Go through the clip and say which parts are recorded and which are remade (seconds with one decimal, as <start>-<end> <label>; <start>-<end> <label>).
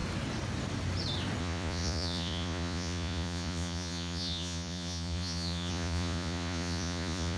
0.0-1.4 recorded; 1.4-7.4 remade